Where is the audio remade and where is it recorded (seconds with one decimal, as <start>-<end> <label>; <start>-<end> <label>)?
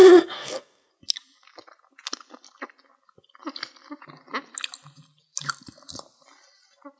0.0-0.9 remade; 0.9-7.0 recorded